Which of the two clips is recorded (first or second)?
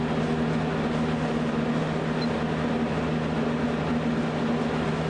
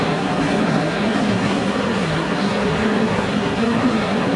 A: first